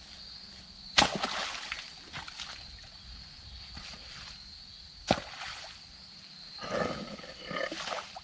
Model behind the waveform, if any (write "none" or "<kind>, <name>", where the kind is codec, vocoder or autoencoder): none